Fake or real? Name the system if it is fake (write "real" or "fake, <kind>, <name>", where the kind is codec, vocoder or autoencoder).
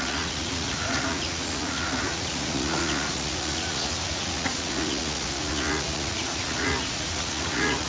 fake, vocoder, Vocos